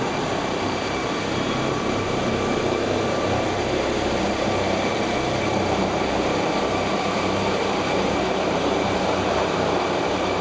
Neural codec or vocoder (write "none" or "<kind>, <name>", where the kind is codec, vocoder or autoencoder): vocoder, BigVGAN v2